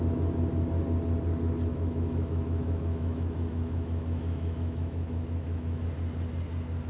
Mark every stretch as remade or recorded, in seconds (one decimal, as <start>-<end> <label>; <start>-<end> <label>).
0.0-1.7 recorded; 1.7-5.8 remade; 5.8-6.9 recorded